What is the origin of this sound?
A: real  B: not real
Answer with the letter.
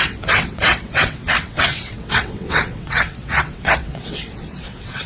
B